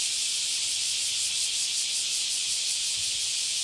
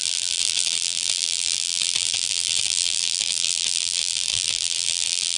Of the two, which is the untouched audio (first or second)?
first